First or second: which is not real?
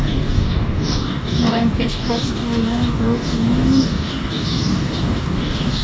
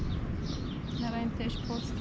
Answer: first